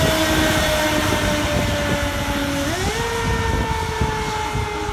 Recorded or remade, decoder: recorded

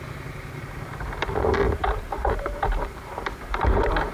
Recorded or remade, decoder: remade, vocoder, BigVGAN v2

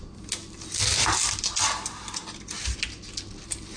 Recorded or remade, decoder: recorded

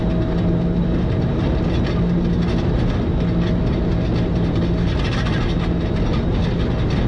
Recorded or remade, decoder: recorded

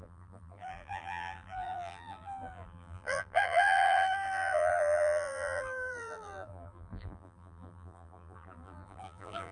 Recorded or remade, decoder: remade, vocoder, BigVGAN v2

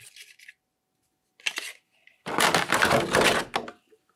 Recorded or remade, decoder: recorded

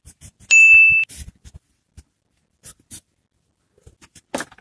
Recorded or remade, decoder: recorded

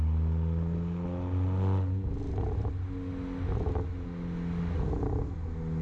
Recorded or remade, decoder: recorded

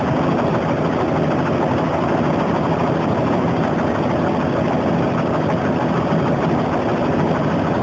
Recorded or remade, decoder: remade, vocoder, BigVGAN v2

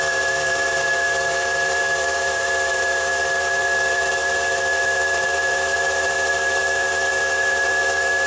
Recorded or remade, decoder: remade, vocoder, BigVGAN v2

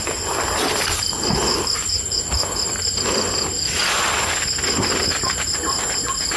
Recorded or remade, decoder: recorded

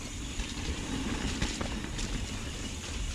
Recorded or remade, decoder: recorded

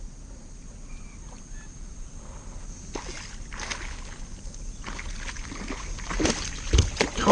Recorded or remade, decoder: recorded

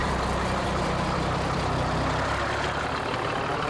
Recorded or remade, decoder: remade, vocoder, BigVGAN v2